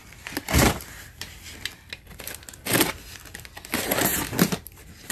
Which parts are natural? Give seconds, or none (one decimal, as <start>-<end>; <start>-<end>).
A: 0.0-4.1